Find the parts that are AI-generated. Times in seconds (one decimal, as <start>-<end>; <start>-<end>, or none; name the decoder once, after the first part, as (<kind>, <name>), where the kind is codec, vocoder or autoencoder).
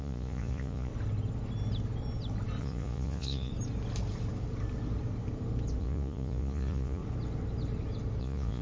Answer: 0.0-0.9 (vocoder, Vocos); 2.6-3.5; 5.8-7.0; 8.2-8.6